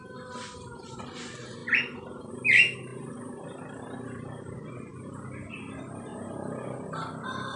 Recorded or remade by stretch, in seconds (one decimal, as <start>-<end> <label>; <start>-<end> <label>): 0.0-7.6 recorded